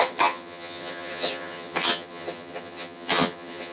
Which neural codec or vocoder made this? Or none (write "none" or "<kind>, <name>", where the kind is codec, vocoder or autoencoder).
vocoder, HiFi-GAN